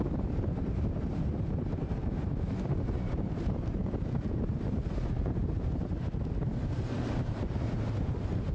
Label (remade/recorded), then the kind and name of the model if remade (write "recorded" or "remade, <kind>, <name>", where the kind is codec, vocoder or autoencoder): remade, vocoder, BigVGAN v2